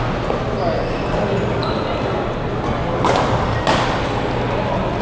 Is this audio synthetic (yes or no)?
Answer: no